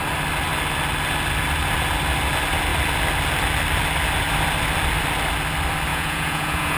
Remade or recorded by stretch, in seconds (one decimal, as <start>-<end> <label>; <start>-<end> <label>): 0.0-5.9 recorded; 5.9-6.8 remade